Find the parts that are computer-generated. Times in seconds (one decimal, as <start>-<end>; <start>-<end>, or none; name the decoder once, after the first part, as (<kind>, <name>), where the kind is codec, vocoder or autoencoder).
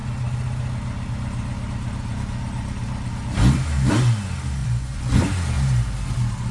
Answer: 4.6-5.2 (vocoder, Vocos)